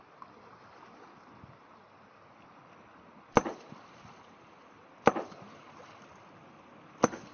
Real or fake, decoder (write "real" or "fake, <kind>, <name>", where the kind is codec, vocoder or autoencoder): real